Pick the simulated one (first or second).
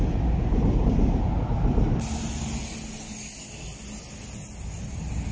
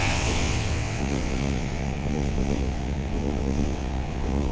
second